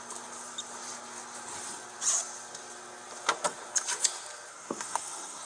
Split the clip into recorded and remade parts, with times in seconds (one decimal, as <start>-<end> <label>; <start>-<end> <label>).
0.0-4.5 recorded; 4.5-5.5 remade